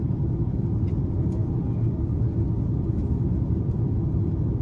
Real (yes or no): yes